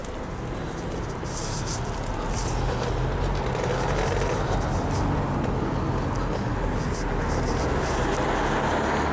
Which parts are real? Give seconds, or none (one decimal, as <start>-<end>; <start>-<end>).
0.0-9.1